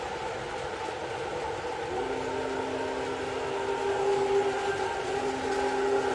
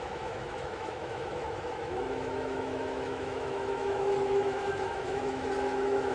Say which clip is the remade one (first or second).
second